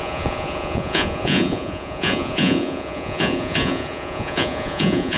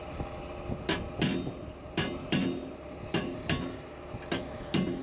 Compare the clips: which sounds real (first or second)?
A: second